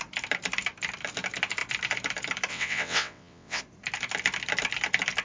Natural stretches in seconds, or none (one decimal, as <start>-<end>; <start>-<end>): 0.0-2.5; 3.6-5.2